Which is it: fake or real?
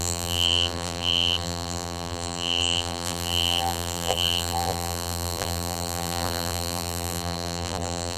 fake